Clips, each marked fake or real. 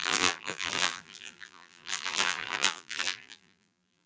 fake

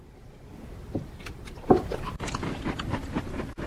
real